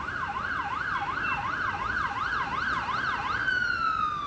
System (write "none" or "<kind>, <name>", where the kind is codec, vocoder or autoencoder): none